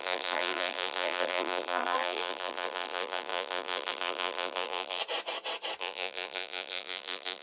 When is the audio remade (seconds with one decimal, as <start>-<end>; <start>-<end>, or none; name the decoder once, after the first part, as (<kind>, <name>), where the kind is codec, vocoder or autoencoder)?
0.0-5.0 (vocoder, BigVGAN v2); 5.8-7.4